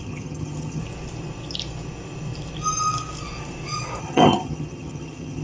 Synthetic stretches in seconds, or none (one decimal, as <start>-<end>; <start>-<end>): 0.0-0.8; 4.0-5.4